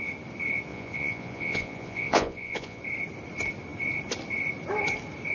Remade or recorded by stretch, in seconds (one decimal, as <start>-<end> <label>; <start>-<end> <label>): 0.0-0.7 recorded; 0.7-2.8 remade; 2.8-5.3 recorded